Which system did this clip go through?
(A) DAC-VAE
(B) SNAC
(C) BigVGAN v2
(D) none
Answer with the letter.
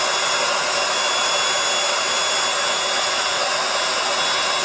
D